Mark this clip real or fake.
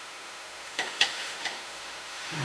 fake